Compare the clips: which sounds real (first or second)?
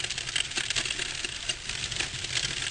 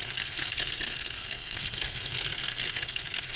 first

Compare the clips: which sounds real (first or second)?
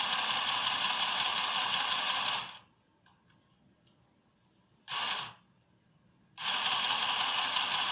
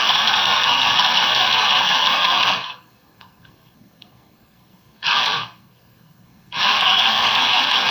first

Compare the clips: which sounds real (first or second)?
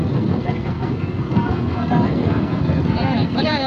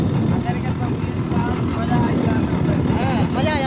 second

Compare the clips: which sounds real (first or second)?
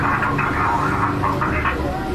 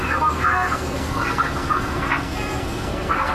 first